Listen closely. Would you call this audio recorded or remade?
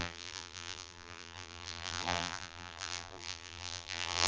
remade